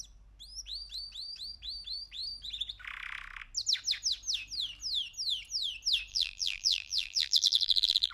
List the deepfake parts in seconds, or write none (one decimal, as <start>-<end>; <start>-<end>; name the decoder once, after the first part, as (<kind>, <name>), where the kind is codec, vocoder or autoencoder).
6.1-8.1 (vocoder, BigVGAN v2)